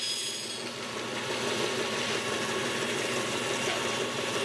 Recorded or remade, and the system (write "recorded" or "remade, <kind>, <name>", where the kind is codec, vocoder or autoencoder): recorded